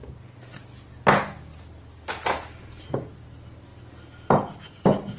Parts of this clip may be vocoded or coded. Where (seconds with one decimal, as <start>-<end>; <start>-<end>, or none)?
none